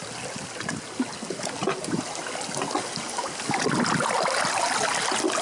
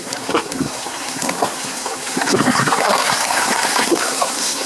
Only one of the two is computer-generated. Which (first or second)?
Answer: second